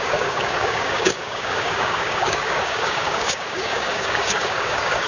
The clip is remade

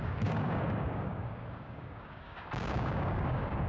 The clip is remade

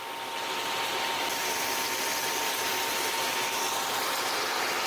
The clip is recorded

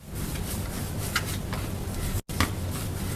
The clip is recorded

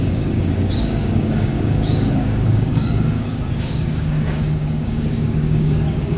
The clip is remade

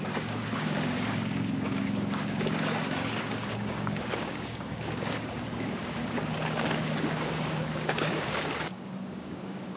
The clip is remade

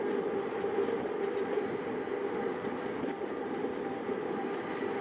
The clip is recorded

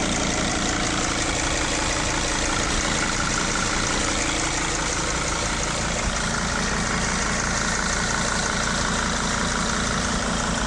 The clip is recorded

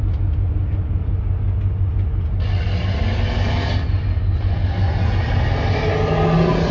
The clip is recorded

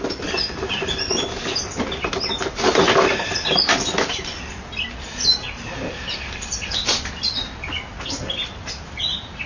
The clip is recorded